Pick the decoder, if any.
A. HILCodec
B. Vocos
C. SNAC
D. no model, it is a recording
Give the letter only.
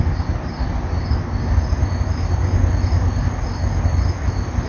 D